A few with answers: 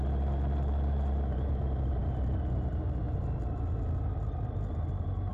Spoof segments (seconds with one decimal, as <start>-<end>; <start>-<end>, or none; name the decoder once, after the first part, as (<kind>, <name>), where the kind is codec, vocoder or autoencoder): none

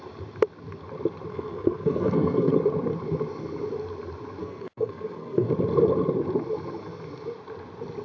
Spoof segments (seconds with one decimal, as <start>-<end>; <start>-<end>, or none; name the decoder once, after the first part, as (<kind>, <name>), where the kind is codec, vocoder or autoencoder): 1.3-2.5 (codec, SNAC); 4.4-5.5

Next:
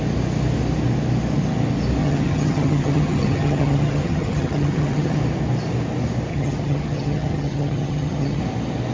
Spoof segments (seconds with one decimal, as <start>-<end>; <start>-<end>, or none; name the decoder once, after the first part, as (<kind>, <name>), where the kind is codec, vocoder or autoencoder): 2.0-5.2 (vocoder, HiFi-GAN); 6.3-8.4